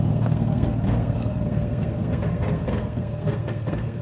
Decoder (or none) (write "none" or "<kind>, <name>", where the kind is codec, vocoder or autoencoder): codec, SNAC